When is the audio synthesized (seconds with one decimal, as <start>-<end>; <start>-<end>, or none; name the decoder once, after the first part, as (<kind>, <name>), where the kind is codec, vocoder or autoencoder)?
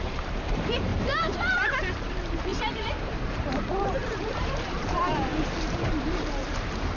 0.0-0.9 (vocoder, BigVGAN v2); 1.5-7.0